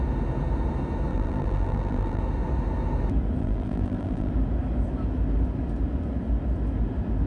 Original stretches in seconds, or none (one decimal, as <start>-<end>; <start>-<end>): 0.0-1.1; 2.2-3.4; 4.3-7.3